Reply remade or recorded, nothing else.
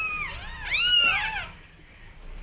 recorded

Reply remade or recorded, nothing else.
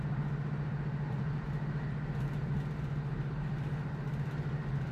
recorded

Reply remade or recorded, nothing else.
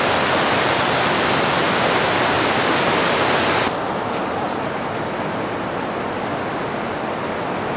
recorded